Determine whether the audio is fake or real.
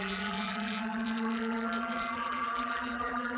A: fake